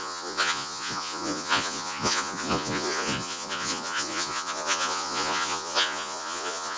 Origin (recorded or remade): remade